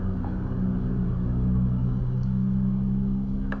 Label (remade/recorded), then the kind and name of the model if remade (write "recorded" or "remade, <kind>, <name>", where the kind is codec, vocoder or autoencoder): remade, codec, DAC